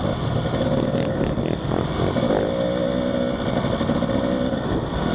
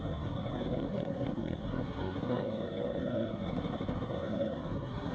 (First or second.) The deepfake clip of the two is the second